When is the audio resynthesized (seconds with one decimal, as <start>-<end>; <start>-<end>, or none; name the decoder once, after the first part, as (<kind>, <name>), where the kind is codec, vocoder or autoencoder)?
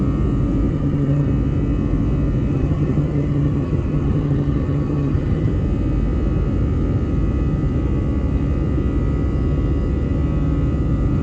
0.7-1.3 (vocoder, HiFi-GAN); 2.5-5.5